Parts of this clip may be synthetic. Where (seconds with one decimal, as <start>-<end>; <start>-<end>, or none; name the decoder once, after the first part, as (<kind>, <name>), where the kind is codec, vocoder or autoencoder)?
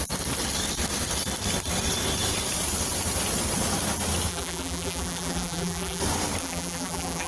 4.3-6.0 (vocoder, BigVGAN v2); 6.4-7.3